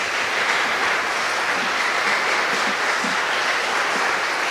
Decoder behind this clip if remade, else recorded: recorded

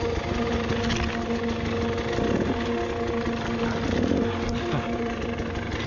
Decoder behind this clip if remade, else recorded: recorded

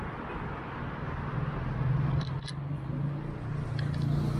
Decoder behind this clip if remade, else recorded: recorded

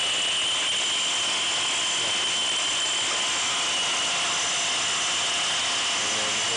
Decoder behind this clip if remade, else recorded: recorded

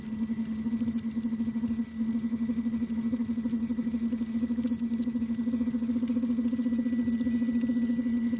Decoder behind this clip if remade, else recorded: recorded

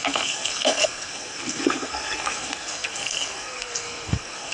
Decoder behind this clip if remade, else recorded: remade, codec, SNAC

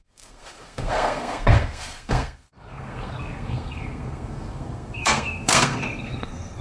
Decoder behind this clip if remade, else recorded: remade, codec, SNAC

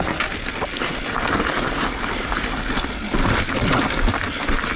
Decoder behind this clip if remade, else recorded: recorded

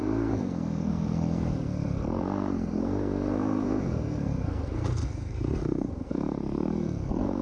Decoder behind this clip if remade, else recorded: remade, codec, SNAC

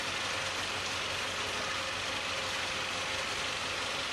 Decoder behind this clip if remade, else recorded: recorded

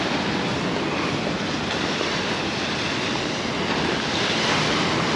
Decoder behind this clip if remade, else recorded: recorded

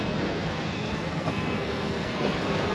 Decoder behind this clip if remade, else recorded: remade, codec, SNAC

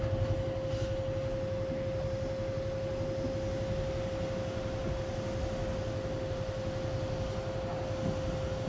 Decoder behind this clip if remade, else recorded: recorded